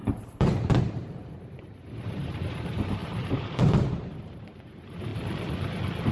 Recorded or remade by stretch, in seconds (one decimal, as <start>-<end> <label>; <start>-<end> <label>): 0.0-5.1 remade; 5.1-6.1 recorded